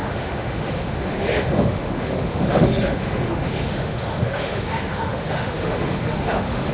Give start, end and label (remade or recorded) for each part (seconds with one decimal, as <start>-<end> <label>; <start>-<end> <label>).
0.0-6.7 remade